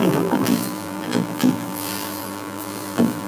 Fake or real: fake